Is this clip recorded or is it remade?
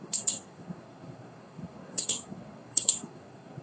remade